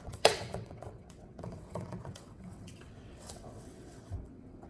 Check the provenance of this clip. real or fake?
fake